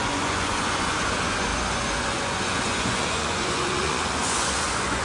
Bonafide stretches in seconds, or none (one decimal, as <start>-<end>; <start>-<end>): none